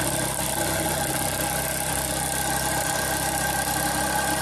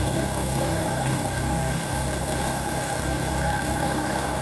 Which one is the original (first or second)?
first